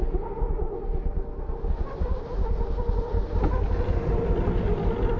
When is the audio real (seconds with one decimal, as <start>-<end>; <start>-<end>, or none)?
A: 0.9-5.2

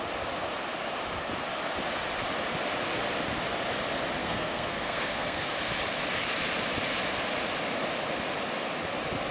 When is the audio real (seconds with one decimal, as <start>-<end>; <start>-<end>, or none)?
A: 0.0-4.2; 5.5-9.3